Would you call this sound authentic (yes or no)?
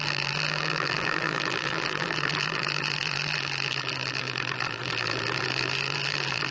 no